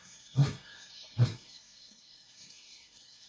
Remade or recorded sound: remade